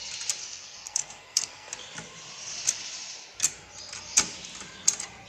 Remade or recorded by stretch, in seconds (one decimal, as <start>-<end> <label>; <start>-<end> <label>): 0.0-0.4 recorded; 0.4-1.7 remade; 1.7-5.3 recorded